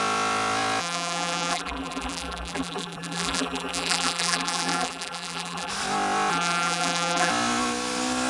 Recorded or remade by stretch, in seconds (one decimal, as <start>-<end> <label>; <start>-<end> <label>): 0.0-0.8 recorded; 0.8-5.7 remade; 5.7-6.3 recorded; 6.3-7.3 remade; 7.3-8.3 recorded